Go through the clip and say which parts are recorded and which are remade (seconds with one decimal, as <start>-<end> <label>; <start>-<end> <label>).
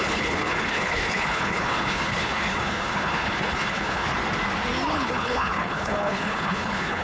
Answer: 0.0-4.1 remade; 4.1-4.9 recorded; 4.9-7.0 remade